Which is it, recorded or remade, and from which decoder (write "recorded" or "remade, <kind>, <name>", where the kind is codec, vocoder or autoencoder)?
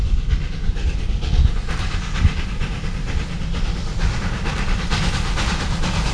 recorded